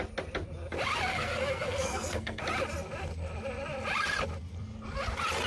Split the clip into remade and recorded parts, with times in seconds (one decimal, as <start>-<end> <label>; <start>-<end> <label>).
0.0-1.1 recorded; 1.1-2.4 remade; 2.4-5.5 recorded